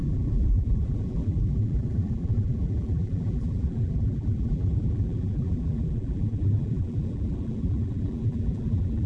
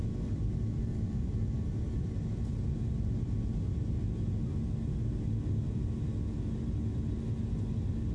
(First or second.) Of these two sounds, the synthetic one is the first